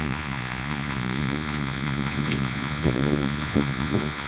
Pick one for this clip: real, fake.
fake